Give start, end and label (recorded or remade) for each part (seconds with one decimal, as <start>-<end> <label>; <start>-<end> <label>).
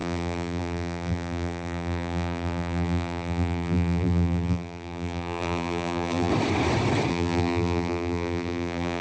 0.0-6.3 remade; 6.3-7.1 recorded; 7.1-9.0 remade